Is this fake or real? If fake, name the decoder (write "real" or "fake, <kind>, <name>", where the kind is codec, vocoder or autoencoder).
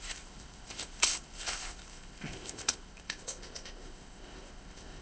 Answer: fake, codec, ZipCodec